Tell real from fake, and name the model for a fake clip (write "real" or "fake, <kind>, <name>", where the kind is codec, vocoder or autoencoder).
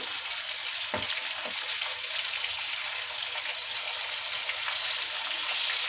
real